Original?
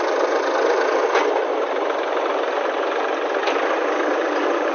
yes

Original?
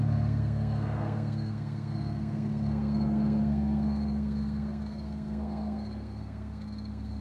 no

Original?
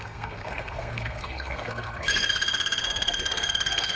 no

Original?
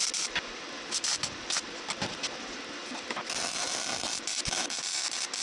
yes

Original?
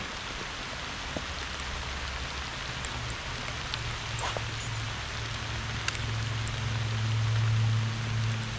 yes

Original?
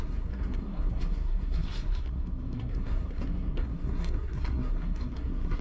no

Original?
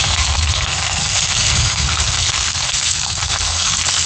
no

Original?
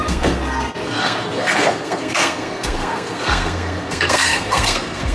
no